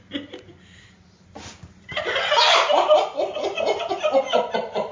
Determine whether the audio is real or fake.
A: real